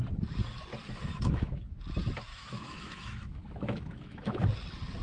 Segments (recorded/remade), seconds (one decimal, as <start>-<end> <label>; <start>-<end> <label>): 0.0-1.1 recorded; 1.1-1.8 remade; 1.8-2.3 recorded; 2.3-4.4 remade; 4.4-5.0 recorded